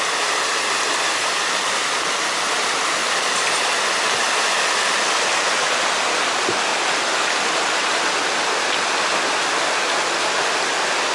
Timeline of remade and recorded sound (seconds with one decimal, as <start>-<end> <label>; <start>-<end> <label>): 0.0-11.1 recorded